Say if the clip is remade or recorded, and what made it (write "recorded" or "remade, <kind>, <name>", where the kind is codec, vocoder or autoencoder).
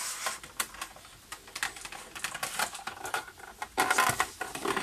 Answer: recorded